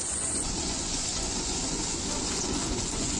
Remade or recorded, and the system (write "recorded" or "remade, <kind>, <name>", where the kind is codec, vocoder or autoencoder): remade, vocoder, Vocos